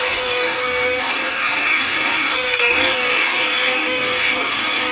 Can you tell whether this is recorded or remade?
remade